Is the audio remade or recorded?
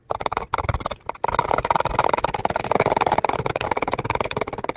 recorded